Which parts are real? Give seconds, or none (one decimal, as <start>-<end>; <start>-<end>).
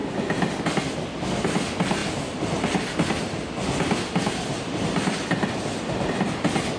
0.0-6.8